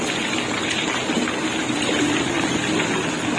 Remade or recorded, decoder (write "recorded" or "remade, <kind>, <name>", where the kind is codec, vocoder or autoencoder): recorded